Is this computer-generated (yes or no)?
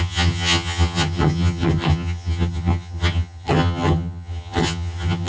yes